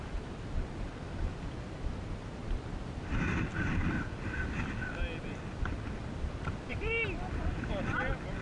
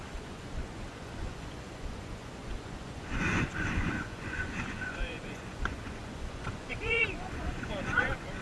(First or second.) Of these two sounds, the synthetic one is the second